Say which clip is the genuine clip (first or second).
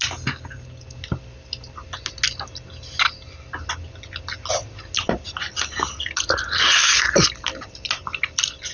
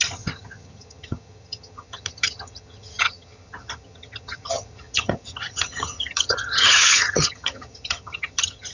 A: first